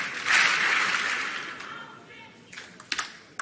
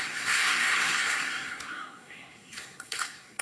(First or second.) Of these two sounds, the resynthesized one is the second